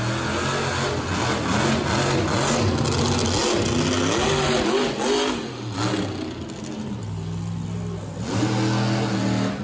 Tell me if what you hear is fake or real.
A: real